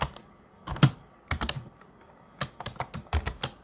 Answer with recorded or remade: recorded